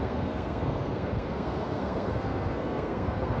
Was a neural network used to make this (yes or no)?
yes